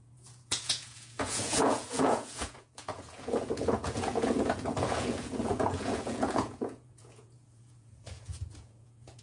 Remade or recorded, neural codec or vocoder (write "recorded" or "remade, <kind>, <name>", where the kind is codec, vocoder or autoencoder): remade, vocoder, Vocos